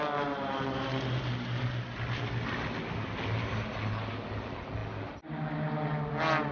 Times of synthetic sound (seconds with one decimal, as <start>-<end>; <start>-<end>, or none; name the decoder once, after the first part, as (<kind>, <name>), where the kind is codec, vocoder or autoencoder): none